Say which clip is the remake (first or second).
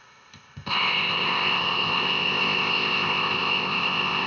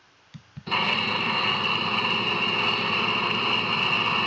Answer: first